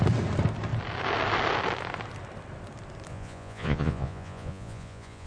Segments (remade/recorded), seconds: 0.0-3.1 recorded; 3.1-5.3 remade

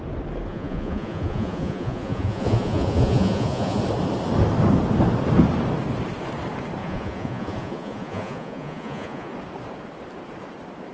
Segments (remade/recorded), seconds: 0.0-0.5 recorded; 0.5-3.8 remade; 3.8-6.8 recorded; 6.8-9.3 remade; 9.3-10.9 recorded